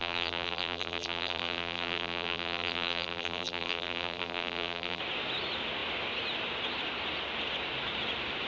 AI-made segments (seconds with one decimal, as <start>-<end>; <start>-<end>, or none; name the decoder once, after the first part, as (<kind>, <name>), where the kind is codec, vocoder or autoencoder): 0.0-5.0 (vocoder, BigVGAN v2)